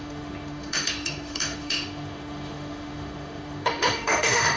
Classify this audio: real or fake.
fake